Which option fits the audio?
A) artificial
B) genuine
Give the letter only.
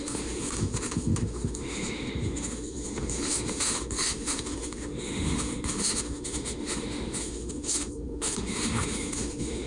A